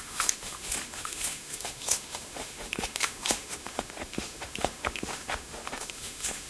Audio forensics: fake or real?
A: fake